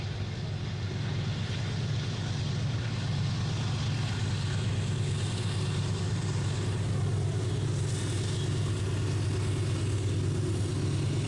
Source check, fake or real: real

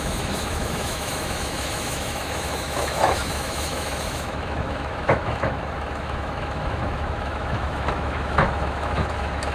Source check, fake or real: fake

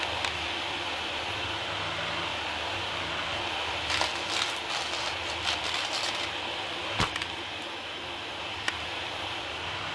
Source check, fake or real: real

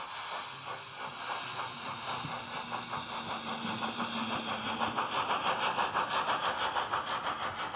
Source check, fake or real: real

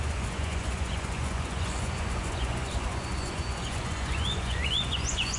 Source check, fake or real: fake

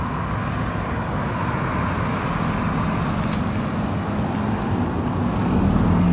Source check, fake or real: real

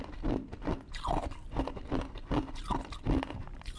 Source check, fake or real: real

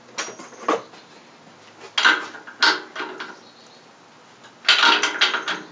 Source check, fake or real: real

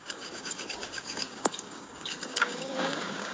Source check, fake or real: fake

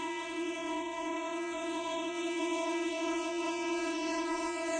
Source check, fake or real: fake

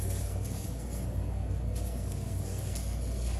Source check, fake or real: fake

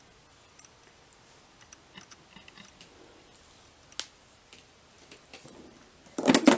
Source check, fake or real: real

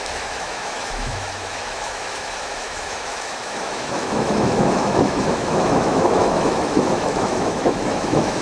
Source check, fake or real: fake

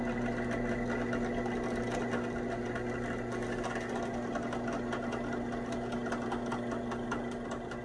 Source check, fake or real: real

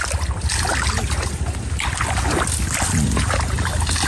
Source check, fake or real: real